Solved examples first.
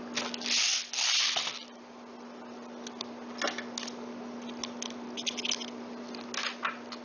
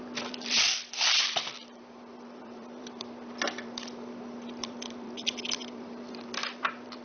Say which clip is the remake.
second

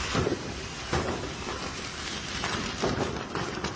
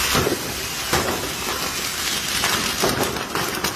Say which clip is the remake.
first